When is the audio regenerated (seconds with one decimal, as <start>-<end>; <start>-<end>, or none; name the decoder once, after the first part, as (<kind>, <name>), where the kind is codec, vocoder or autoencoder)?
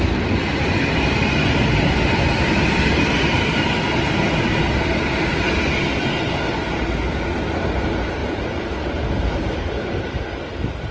8.2-10.2 (vocoder, BigVGAN v2)